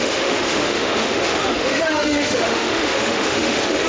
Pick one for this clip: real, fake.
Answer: fake